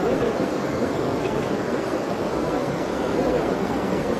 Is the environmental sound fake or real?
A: fake